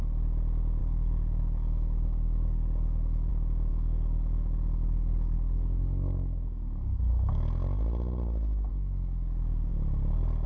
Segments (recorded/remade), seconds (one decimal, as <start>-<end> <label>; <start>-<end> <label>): 0.0-0.8 recorded; 0.8-3.3 remade; 3.3-3.7 recorded; 3.7-7.5 remade; 7.5-8.7 recorded; 8.7-9.7 remade; 9.7-10.5 recorded